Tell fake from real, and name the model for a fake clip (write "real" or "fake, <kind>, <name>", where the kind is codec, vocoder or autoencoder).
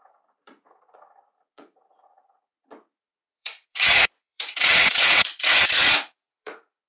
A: fake, vocoder, Vocos